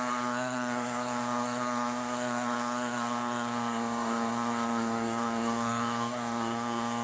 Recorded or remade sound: remade